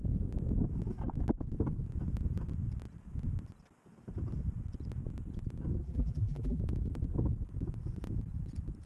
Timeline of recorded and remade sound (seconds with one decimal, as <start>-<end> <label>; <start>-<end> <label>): 0.0-5.8 recorded; 5.8-6.6 remade; 6.6-8.9 recorded